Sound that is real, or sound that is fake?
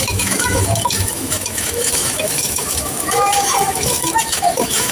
fake